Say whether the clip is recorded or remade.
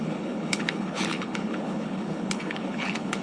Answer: remade